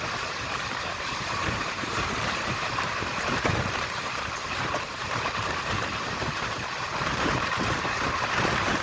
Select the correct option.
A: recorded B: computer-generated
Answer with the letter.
B